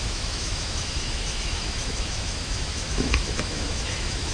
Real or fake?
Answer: fake